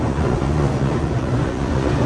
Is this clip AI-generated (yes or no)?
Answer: yes